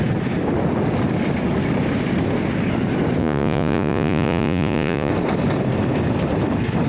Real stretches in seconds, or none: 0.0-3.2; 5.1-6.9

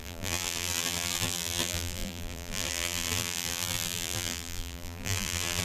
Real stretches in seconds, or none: none

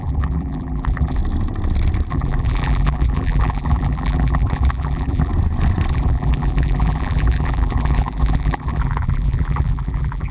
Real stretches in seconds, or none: 1.2-2.1; 5.3-5.9

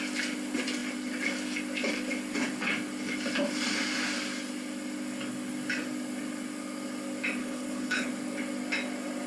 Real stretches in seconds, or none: 0.0-7.4; 8.1-9.3

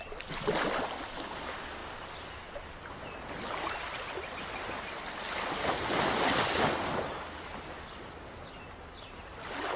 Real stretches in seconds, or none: 0.0-9.8